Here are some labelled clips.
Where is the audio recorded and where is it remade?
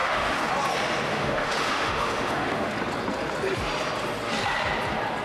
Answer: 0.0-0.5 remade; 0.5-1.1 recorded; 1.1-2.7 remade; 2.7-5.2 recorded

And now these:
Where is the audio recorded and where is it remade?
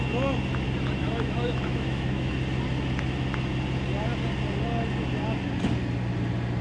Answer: 0.0-1.0 recorded; 1.0-2.3 remade; 2.3-6.6 recorded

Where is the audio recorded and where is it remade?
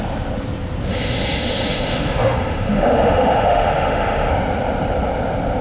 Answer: 0.0-0.9 recorded; 0.9-4.3 remade; 4.3-5.6 recorded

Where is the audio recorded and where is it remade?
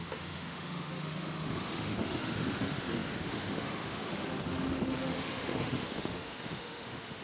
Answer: 0.0-7.2 remade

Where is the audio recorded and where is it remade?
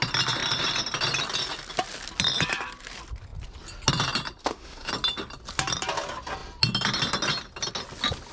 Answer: 0.0-4.4 recorded; 4.4-4.9 remade; 4.9-8.3 recorded